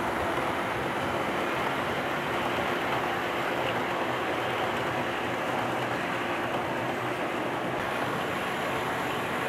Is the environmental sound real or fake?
real